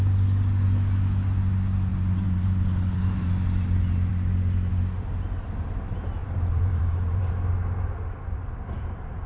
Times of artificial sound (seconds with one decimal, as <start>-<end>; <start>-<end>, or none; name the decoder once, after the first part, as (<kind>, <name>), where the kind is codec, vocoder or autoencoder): 1.9-3.3 (vocoder, BigVGAN v2); 6.2-7.3